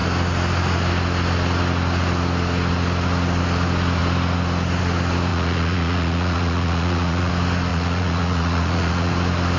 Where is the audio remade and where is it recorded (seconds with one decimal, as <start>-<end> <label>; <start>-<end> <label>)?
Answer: 0.0-5.3 recorded; 5.3-7.3 remade; 7.3-7.7 recorded; 7.7-9.1 remade; 9.1-9.6 recorded

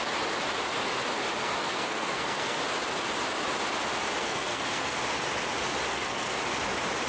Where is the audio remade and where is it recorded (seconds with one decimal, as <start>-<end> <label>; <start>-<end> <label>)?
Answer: 0.0-1.4 recorded; 1.4-2.6 remade; 2.6-4.2 recorded; 4.2-5.0 remade; 5.0-5.9 recorded; 5.9-6.4 remade; 6.4-7.1 recorded

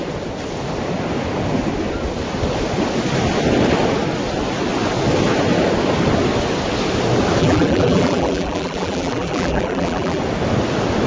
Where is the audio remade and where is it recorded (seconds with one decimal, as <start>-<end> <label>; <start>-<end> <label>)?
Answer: 0.0-7.4 recorded; 7.4-10.2 remade; 10.2-11.1 recorded

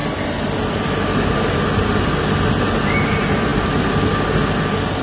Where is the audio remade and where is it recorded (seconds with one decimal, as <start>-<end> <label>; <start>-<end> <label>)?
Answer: 0.0-5.0 recorded